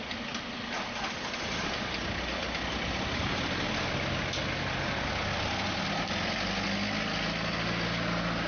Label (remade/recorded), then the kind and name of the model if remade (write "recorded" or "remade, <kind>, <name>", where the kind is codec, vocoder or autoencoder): recorded